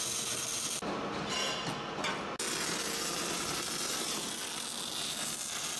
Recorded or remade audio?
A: recorded